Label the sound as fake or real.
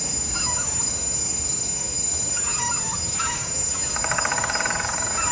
fake